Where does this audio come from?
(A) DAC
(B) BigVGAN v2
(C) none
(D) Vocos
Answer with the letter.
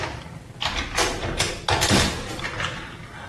C